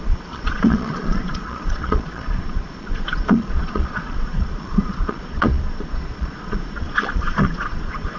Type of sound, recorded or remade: remade